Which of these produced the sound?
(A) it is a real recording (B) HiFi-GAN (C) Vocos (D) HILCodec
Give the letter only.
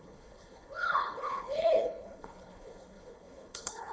D